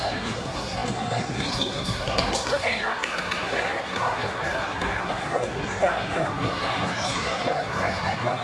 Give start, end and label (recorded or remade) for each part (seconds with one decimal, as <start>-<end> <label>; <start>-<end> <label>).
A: 0.0-8.4 remade